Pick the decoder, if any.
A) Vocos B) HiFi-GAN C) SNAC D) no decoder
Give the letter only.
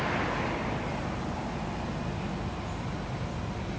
D